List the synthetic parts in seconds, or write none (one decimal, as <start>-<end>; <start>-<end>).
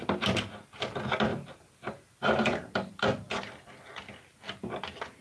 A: 1.3-3.8